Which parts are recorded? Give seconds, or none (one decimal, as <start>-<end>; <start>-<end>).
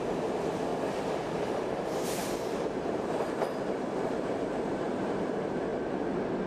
0.7-1.6; 5.7-6.5